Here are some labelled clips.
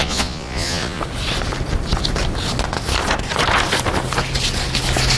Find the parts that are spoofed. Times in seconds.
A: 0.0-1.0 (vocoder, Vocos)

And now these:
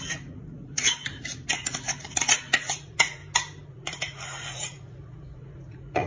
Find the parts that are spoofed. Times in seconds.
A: 0.0-3.2 (vocoder, Vocos); 3.7-6.1

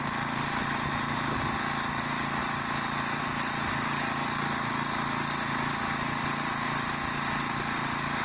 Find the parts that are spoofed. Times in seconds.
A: none

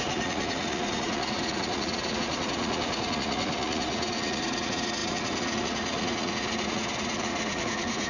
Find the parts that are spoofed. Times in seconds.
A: 0.0-8.1 (vocoder, Vocos)

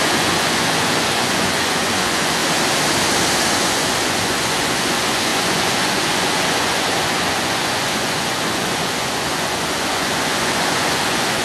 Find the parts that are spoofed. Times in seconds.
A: 0.0-2.4 (vocoder, Vocos); 3.5-11.4

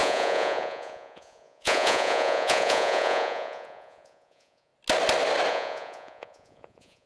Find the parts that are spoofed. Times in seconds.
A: 0.0-4.7 (vocoder, Vocos); 5.5-7.1

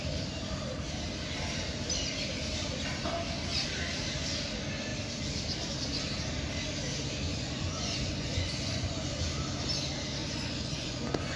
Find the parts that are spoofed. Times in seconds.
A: 7.3-9.2 (vocoder, Vocos); 10.2-11.4